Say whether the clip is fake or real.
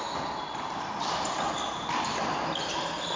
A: real